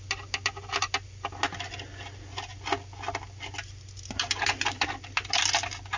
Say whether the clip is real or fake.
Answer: real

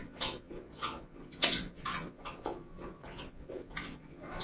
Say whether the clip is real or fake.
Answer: fake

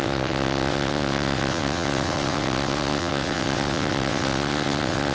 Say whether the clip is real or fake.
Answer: fake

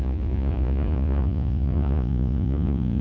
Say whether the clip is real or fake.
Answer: fake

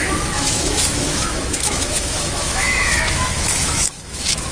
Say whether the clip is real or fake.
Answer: fake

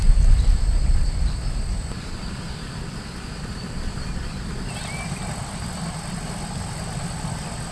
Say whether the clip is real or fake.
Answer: real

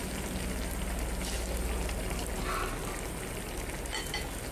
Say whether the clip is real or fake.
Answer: real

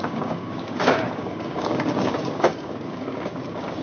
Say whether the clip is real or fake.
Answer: fake